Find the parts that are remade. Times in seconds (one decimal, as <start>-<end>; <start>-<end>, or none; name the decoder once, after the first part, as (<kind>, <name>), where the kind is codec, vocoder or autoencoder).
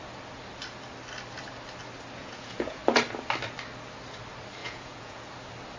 2.2-2.8 (vocoder, Vocos); 4.6-5.3